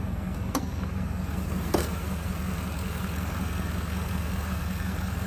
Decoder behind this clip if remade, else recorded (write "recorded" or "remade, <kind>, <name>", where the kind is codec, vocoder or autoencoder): remade, codec, SNAC